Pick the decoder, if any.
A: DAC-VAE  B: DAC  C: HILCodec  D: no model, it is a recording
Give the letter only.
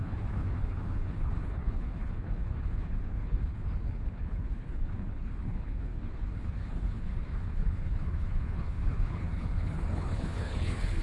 C